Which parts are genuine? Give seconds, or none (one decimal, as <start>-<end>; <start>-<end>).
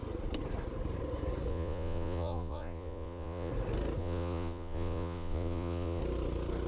0.0-1.5; 3.5-4.0; 6.0-6.7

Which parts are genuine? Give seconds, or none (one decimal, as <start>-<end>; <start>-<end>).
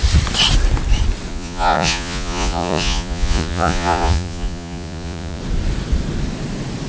0.0-1.3; 5.4-6.9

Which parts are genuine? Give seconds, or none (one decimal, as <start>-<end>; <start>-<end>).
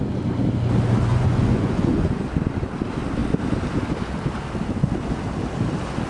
0.0-1.1; 2.2-6.1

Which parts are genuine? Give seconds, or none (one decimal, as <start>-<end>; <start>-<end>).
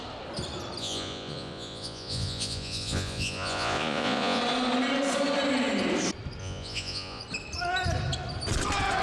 0.0-0.8; 4.4-6.4; 7.2-9.0